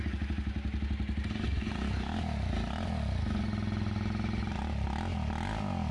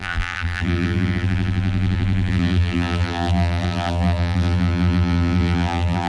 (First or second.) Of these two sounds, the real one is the first